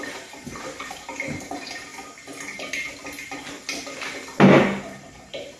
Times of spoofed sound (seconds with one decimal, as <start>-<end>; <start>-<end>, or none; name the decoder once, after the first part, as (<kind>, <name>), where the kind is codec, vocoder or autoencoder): 0.0-1.9 (vocoder, BigVGAN v2); 5.1-5.6